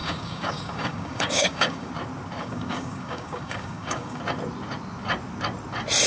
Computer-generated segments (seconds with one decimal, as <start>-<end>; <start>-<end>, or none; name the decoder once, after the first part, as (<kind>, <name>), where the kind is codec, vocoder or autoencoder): 0.0-1.9 (codec, DAC); 2.4-4.2